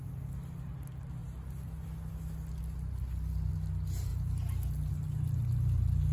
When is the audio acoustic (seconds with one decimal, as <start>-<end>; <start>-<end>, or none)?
0.0-6.1